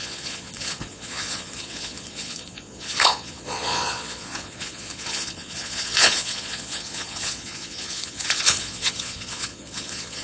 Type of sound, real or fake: fake